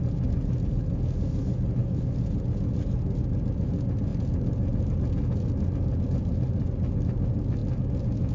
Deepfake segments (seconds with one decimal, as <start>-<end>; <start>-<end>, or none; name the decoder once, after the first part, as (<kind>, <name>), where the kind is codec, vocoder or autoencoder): none